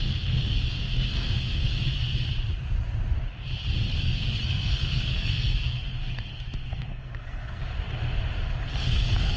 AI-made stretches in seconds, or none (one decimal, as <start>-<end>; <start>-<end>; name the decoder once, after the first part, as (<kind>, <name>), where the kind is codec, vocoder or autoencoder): 0.0-2.1 (codec, SNAC); 4.0-7.6; 8.7-9.4